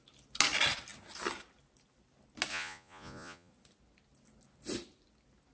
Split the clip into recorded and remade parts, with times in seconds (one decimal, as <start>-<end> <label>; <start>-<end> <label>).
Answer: 0.0-2.5 recorded; 2.5-3.5 remade; 3.5-5.5 recorded